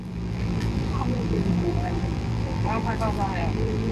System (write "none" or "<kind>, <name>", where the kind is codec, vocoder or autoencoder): vocoder, BigVGAN v2